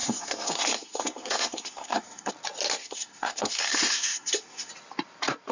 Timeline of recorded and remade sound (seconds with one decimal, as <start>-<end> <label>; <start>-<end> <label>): 0.0-2.3 remade; 2.3-2.8 recorded; 2.8-4.7 remade; 4.7-5.5 recorded